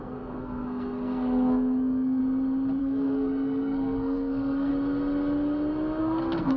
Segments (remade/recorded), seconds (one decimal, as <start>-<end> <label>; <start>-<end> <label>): 0.0-2.2 remade; 2.2-2.8 recorded; 2.8-4.7 remade; 4.7-6.0 recorded; 6.0-6.6 remade